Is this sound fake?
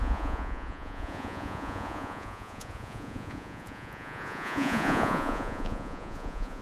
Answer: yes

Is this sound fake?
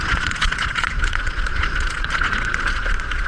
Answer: yes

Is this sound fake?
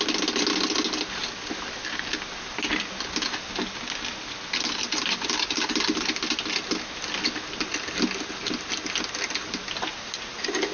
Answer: no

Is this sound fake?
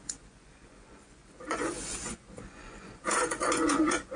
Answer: yes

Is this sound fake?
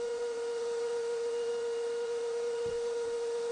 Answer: yes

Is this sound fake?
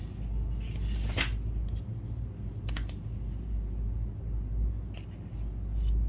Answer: no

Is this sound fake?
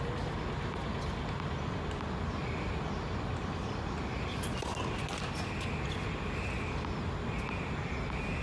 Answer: no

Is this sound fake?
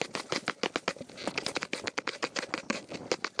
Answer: no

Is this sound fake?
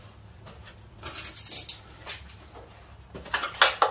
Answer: no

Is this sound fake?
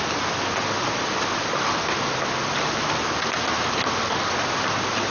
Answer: no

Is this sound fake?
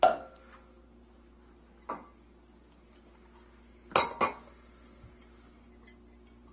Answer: no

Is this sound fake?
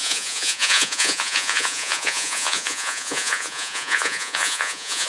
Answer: yes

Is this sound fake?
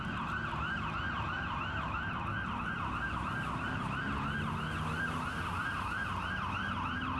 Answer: no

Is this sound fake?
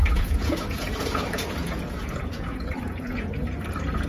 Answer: yes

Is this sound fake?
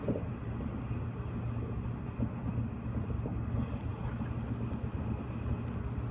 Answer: no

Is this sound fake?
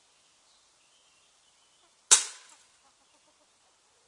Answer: no